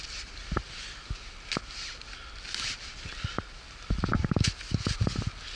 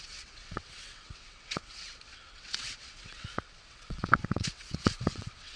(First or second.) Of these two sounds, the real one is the first